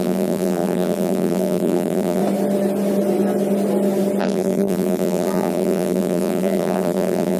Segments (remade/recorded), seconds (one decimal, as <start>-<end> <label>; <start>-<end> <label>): 0.0-2.2 remade; 2.2-4.2 recorded; 4.2-7.4 remade